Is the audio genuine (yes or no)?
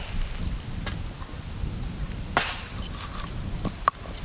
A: yes